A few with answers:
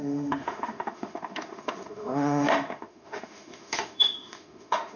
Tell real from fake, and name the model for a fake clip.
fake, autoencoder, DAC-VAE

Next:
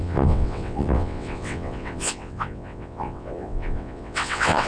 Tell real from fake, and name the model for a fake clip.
fake, vocoder, WaveNeXt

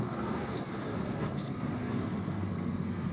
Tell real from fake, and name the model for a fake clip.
fake, codec, SNAC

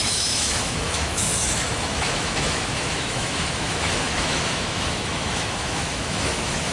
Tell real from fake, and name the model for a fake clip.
fake, autoencoder, DAC-VAE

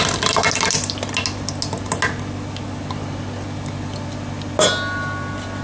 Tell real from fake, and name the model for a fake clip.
real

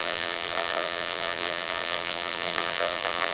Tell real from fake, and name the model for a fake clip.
fake, vocoder, BigVGAN v2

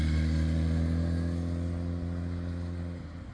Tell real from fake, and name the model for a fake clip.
real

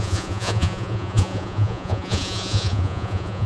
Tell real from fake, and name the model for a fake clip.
fake, vocoder, Vocos